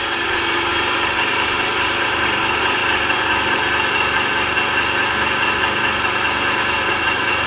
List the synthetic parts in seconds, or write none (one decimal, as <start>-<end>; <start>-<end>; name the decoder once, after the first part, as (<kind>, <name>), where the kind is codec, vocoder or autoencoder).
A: 0.0-2.8 (vocoder, BigVGAN v2); 6.9-7.5